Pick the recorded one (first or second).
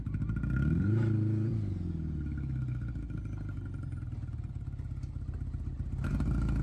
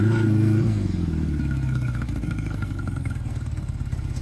first